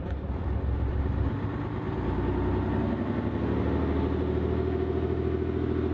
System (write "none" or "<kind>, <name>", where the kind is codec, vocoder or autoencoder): none